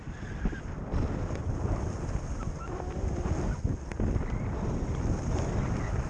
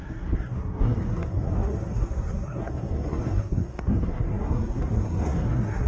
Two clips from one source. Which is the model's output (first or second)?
second